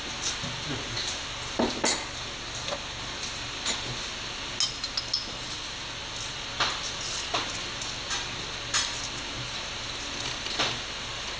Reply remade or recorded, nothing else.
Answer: recorded